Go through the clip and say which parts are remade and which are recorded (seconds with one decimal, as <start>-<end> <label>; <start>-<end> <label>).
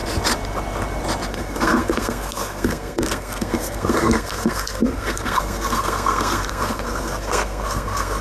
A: 0.0-1.3 recorded; 1.3-8.2 remade